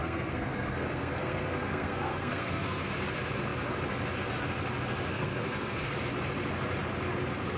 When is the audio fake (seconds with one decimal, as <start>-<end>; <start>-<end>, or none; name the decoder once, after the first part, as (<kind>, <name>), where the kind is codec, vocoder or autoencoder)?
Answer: 0.0-2.9 (codec, SNAC); 5.1-5.9